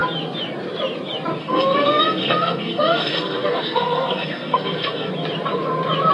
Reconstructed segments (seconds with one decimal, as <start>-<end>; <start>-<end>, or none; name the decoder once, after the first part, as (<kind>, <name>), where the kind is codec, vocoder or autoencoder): 1.4-5.1 (codec, SNAC)